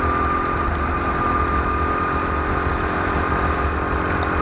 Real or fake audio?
real